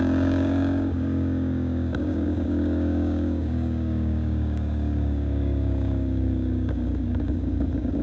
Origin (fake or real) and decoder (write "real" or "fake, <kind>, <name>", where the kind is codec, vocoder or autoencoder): fake, codec, DAC